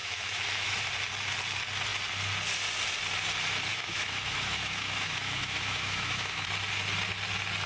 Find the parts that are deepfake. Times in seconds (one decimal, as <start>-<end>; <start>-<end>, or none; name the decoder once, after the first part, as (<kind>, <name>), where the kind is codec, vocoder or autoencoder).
0.0-0.8 (autoencoder, DAC-VAE); 3.7-6.5